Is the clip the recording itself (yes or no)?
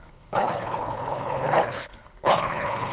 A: no